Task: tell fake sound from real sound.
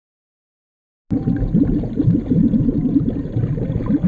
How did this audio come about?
real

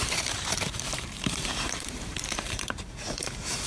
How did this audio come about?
fake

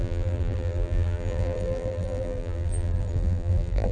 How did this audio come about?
fake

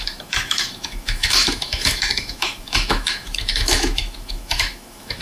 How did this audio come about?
fake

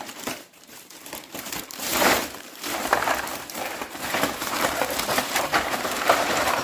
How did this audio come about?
fake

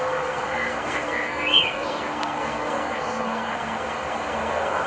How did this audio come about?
fake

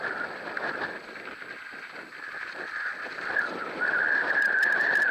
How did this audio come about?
real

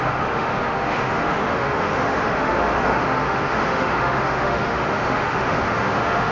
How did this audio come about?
fake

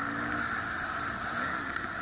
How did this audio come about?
real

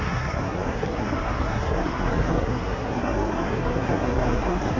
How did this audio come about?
fake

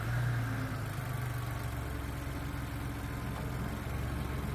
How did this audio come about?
real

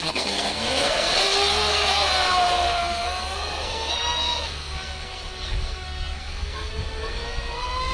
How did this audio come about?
fake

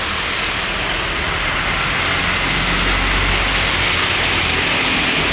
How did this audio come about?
real